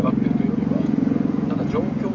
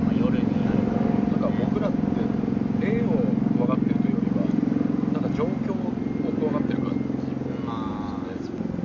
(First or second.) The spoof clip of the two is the first